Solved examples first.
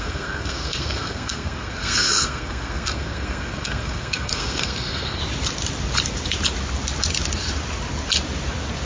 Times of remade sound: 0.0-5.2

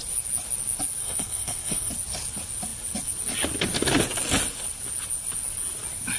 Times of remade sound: 1.0-1.9